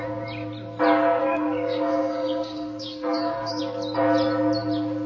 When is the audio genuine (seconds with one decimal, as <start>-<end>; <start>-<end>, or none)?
0.0-1.2; 3.6-5.1